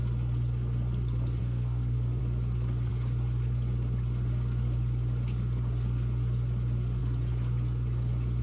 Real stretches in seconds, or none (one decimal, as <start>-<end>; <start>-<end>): 0.0-1.4; 2.2-8.4